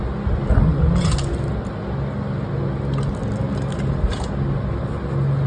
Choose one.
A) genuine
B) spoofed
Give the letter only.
A